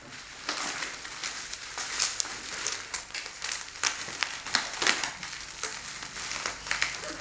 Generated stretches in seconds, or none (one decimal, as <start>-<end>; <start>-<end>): none